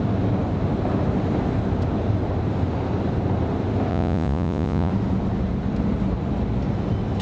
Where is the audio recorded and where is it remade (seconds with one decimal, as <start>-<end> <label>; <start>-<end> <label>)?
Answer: 0.0-3.9 recorded; 3.9-4.9 remade; 4.9-7.2 recorded